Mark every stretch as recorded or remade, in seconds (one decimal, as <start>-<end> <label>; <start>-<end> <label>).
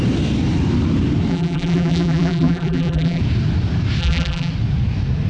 0.0-1.3 recorded; 1.3-3.2 remade; 3.2-4.0 recorded; 4.0-4.5 remade; 4.5-5.3 recorded